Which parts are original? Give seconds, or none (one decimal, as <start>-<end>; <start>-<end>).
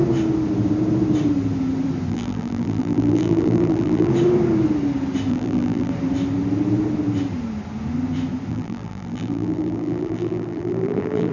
0.0-2.1; 4.1-5.3; 5.9-8.5